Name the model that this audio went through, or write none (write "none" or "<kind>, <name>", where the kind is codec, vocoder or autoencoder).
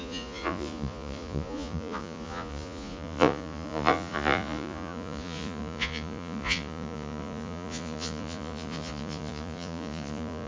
vocoder, Vocos